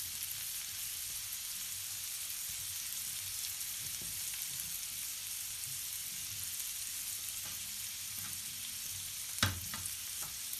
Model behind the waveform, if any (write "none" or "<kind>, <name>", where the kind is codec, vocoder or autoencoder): none